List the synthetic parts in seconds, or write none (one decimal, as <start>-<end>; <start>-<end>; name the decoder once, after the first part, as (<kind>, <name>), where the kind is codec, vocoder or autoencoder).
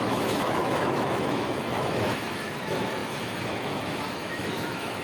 0.0-5.0 (autoencoder, DAC-VAE)